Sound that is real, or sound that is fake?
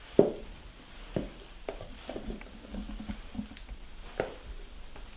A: real